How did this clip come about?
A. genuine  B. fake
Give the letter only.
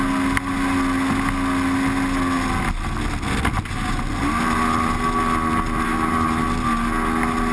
A